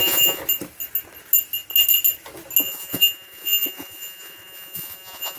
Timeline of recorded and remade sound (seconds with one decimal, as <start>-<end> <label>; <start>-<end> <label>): 0.0-0.4 remade; 0.4-2.6 recorded; 2.6-5.4 remade